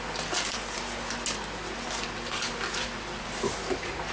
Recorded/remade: recorded